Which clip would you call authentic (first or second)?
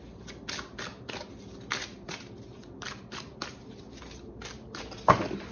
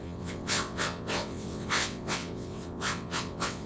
first